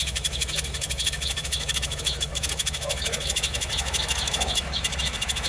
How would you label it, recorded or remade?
remade